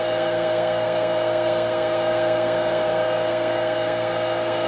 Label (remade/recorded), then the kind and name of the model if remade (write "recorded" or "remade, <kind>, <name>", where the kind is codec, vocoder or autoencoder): remade, codec, SNAC